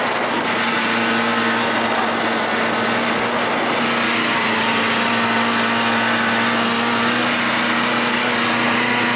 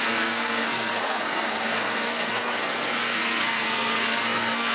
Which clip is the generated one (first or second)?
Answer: second